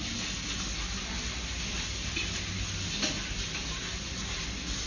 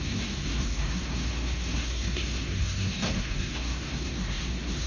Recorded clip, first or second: first